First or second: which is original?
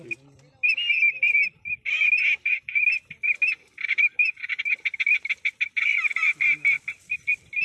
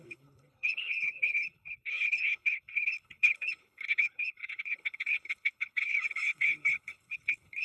first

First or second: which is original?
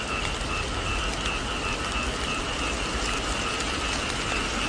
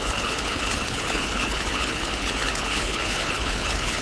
first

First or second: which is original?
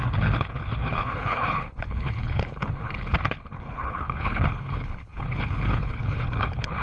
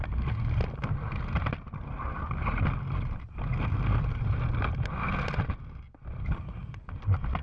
second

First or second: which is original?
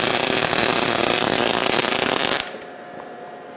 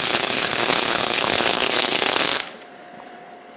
first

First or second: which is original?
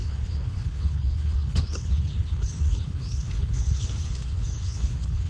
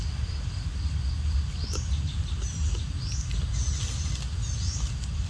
second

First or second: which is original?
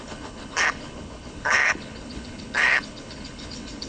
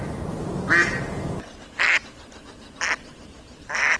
second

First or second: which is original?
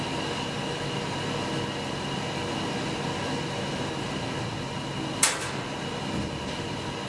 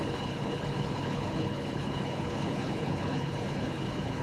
first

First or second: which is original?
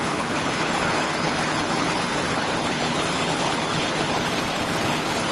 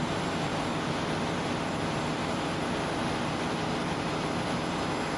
second